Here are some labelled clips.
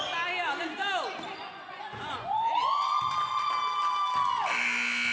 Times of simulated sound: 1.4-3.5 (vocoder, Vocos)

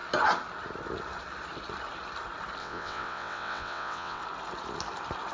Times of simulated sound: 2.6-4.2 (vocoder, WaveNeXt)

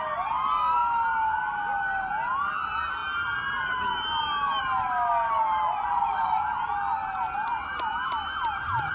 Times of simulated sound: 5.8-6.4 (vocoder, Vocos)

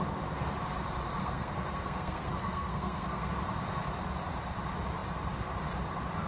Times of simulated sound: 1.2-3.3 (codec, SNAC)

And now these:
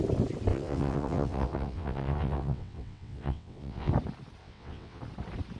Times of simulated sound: 0.5-3.9 (vocoder, WaveNeXt); 4.4-5.0

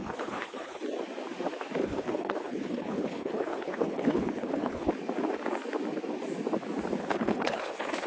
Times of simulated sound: 0.0-0.8 (codec, HILCodec); 1.8-4.9; 7.0-8.1

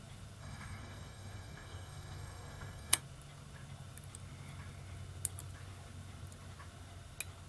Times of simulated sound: 0.4-3.0 (codec, SNAC)

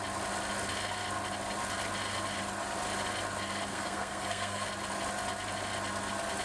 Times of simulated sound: 3.7-4.7 (codec, SNAC)